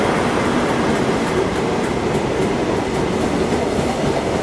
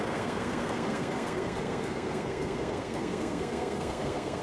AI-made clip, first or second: second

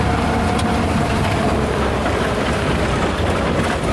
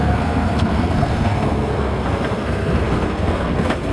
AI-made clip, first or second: second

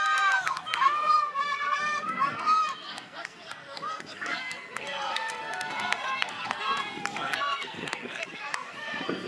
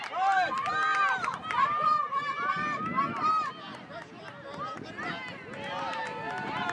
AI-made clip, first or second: first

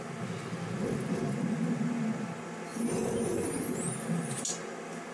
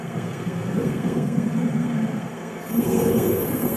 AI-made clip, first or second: second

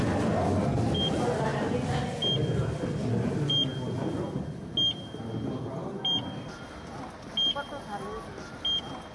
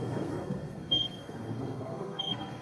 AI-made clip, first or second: second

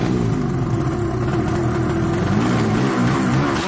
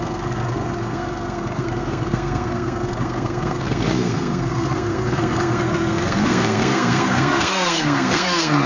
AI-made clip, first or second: second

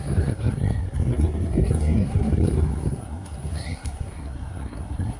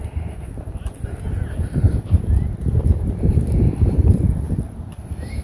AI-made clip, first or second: first